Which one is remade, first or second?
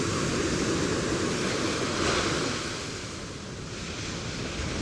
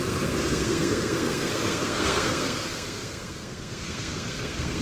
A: second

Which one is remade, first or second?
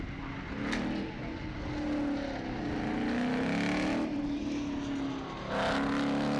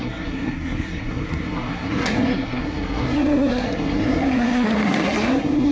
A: second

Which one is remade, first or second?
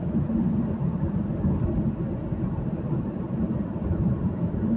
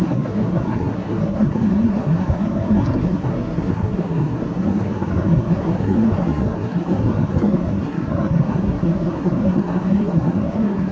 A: second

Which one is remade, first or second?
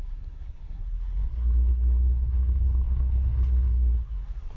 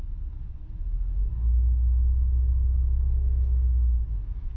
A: first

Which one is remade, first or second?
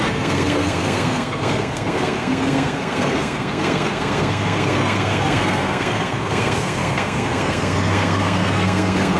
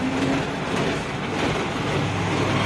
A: first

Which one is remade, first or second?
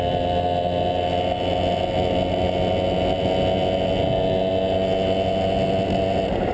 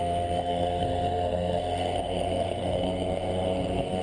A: second